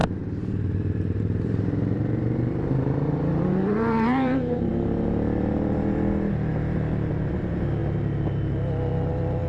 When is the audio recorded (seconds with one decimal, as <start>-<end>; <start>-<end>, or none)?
4.7-9.5